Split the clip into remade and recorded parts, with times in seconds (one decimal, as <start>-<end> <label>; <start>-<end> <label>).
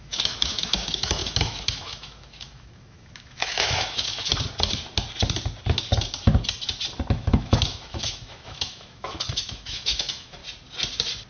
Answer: 0.0-4.3 remade; 4.3-7.1 recorded; 7.1-10.4 remade; 10.4-11.3 recorded